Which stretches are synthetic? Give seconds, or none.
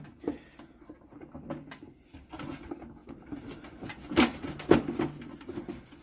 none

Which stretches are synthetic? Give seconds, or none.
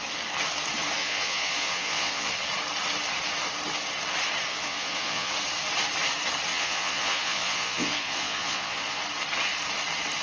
1.0-2.3 (vocoder, Vocos); 4.5-5.3; 6.5-9.0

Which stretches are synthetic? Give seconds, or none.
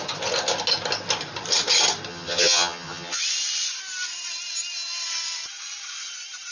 2.1-3.2 (vocoder, HiFi-GAN)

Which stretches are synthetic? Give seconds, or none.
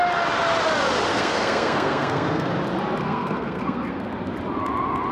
1.1-2.5 (codec, SNAC); 3.0-4.1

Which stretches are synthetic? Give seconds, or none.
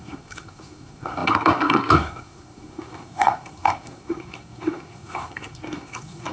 0.0-6.3 (codec, SNAC)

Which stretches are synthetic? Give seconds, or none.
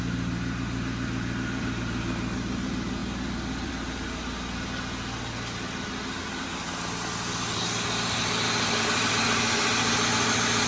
none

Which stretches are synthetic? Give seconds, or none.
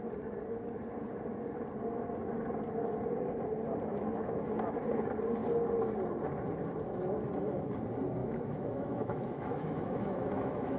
3.9-4.8 (autoencoder, DAC-VAE); 8.2-10.8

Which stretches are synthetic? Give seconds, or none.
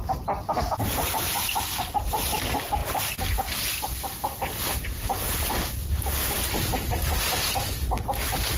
none